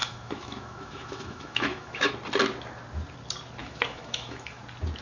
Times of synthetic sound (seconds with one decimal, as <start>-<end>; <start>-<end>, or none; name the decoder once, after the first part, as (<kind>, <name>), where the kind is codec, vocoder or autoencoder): 0.0-2.1 (autoencoder, DAC-VAE); 3.6-4.6